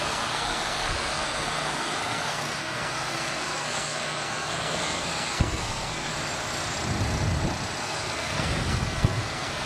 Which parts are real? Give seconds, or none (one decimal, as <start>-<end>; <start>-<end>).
6.1-7.8